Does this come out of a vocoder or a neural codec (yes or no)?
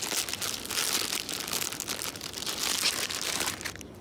no